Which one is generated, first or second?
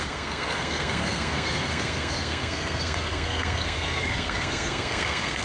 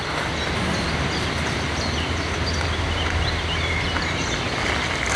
first